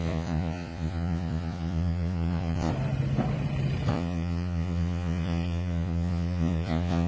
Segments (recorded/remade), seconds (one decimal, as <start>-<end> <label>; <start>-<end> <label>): 0.0-2.7 remade; 2.7-3.9 recorded; 3.9-7.1 remade